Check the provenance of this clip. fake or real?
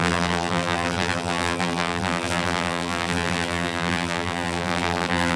fake